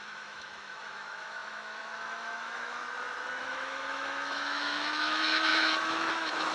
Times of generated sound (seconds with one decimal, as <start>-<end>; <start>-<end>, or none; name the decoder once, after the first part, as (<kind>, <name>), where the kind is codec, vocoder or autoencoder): 0.0-2.8 (autoencoder, DAC-VAE); 3.4-6.5